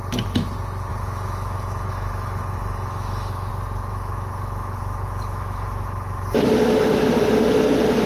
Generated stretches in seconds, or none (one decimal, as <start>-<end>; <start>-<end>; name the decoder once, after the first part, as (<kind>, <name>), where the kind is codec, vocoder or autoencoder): 0.9-3.5 (autoencoder, DAC-VAE); 3.9-6.9